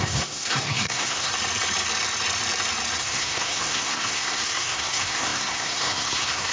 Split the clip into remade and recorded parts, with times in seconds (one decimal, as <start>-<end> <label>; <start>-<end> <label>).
0.0-1.3 remade; 1.3-3.0 recorded; 3.0-6.5 remade

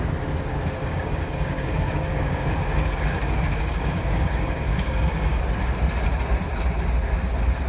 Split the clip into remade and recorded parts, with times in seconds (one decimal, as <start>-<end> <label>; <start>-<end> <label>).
0.0-0.8 recorded; 0.8-5.4 remade; 5.4-7.7 recorded

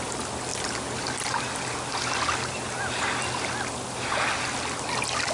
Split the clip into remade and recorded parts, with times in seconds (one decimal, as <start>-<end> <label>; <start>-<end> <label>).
0.0-5.3 recorded

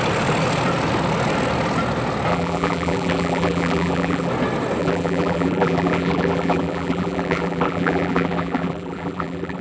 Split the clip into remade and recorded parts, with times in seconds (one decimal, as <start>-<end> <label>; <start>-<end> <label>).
0.0-2.3 recorded; 2.3-4.3 remade; 4.3-4.8 recorded; 4.8-9.6 remade

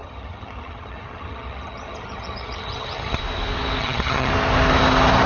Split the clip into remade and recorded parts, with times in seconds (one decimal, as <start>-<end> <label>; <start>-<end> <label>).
0.0-3.2 remade; 3.2-3.8 recorded; 3.8-4.3 remade; 4.3-5.3 recorded